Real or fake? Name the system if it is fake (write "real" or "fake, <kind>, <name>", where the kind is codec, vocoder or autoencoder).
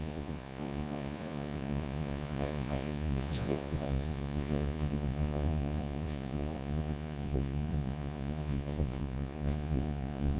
fake, vocoder, Vocos